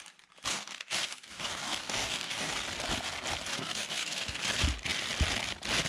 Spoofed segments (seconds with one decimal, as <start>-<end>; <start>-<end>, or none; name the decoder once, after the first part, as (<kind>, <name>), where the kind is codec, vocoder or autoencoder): 0.5-2.5 (codec, DAC); 3.5-4.4